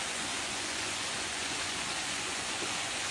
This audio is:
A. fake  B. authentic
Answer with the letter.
A